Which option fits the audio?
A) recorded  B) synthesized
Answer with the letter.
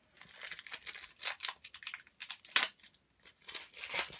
A